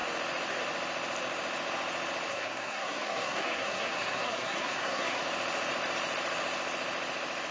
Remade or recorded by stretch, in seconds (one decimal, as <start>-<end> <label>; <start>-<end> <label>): 0.0-2.3 recorded; 2.3-5.2 remade; 5.2-7.5 recorded

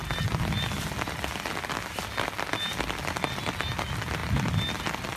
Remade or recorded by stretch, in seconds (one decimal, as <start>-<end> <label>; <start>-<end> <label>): 0.0-5.2 recorded